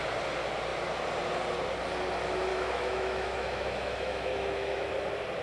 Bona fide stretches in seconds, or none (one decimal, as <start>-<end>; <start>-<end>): 0.0-2.5; 4.9-5.4

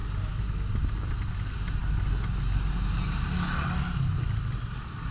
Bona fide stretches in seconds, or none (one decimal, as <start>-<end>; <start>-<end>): 0.0-5.1

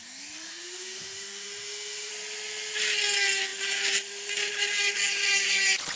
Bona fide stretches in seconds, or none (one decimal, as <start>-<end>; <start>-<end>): 0.0-0.5; 2.1-6.0

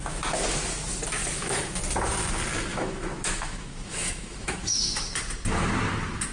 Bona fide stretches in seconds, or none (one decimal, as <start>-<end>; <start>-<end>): 0.0-1.2; 1.8-2.7; 5.2-6.3